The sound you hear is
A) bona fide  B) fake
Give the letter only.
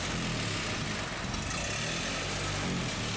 A